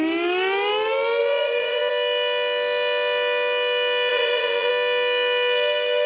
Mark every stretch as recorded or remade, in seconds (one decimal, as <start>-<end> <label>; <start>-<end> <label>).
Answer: 0.0-1.2 recorded; 1.2-1.9 remade; 1.9-4.1 recorded; 4.1-4.7 remade; 4.7-6.1 recorded